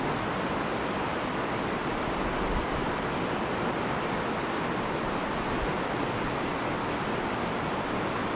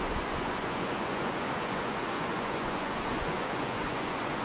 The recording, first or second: first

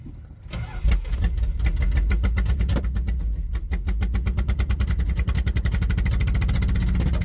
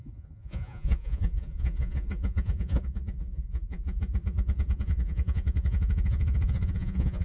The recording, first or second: first